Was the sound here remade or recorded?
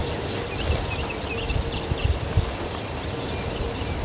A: recorded